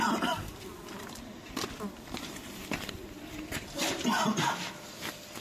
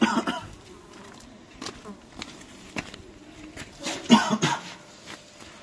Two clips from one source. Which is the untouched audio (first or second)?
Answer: second